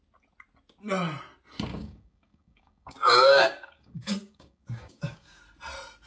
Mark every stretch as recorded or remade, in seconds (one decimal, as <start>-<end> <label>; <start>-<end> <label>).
0.0-1.7 recorded; 1.7-5.4 remade; 5.4-6.1 recorded